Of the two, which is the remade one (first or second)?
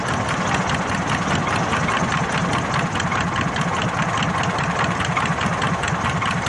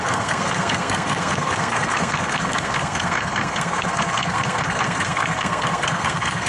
second